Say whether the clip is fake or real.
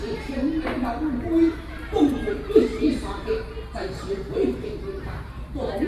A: fake